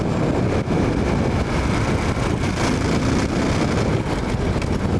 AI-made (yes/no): no